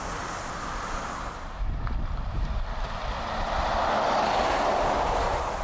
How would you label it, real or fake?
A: real